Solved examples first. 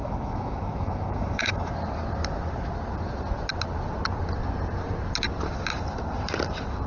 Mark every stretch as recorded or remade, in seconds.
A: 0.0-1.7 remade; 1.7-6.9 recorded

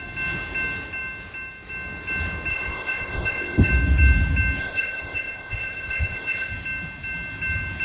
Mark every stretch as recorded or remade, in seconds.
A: 0.0-2.5 recorded; 2.5-3.7 remade; 3.7-4.6 recorded; 4.6-6.5 remade; 6.5-7.8 recorded

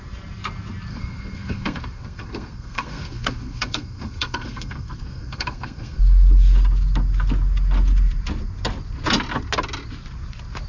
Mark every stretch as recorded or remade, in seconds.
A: 0.0-0.9 recorded; 0.9-6.0 remade; 6.0-10.7 recorded

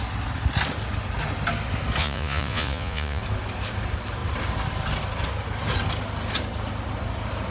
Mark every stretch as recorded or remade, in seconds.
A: 0.0-2.0 recorded; 2.0-3.2 remade; 3.2-7.5 recorded